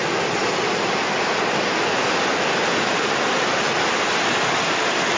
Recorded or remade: recorded